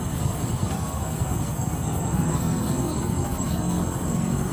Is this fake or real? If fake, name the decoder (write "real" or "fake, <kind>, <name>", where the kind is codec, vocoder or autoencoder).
fake, codec, SNAC